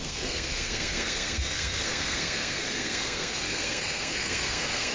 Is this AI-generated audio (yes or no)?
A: yes